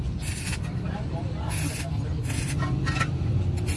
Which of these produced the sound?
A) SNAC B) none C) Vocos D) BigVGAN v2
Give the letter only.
B